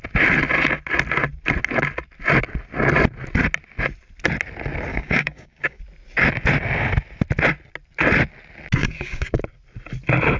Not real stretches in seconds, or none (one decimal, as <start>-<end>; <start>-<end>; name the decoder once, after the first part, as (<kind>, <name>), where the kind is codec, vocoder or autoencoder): 4.9-5.8 (codec, DAC); 8.8-9.4